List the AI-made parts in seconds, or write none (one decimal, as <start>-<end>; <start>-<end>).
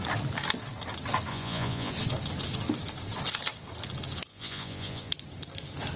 1.3-1.9; 4.3-5.1